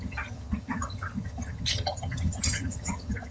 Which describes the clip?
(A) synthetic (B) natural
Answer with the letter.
A